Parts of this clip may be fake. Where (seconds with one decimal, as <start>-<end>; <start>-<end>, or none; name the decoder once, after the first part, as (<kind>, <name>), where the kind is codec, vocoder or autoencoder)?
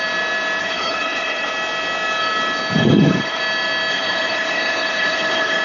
0.6-1.5 (codec, HILCodec); 2.8-3.4; 3.9-5.6